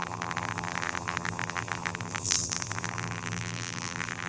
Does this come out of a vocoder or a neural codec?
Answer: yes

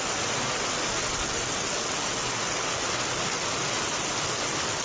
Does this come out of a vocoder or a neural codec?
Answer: no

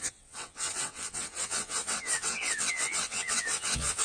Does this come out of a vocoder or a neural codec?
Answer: yes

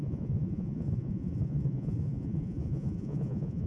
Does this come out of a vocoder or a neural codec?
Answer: yes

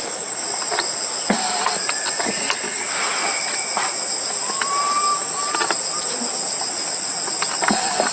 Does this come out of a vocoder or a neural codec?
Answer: no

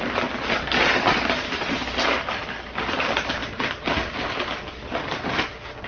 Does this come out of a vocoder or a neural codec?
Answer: no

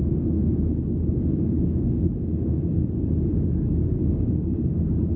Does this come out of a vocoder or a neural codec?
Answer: yes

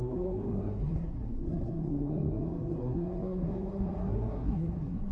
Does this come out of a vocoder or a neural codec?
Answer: yes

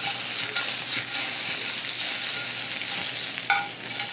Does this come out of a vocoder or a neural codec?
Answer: no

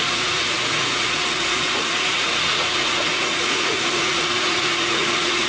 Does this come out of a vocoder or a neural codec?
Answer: yes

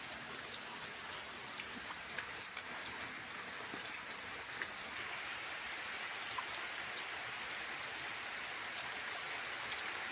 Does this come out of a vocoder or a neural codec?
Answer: no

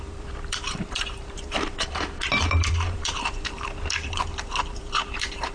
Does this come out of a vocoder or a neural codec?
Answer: yes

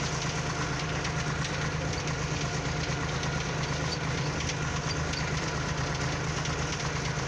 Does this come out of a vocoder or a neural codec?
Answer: no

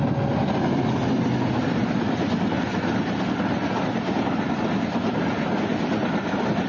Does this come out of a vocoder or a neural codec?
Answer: no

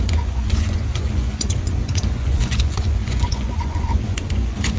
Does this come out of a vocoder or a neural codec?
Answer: yes